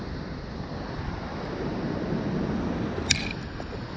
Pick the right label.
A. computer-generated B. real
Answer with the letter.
B